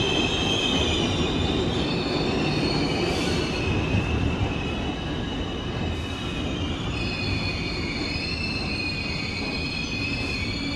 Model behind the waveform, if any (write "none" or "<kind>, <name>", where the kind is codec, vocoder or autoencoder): none